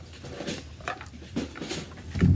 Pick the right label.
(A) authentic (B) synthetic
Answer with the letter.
A